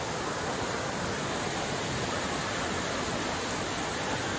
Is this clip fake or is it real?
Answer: real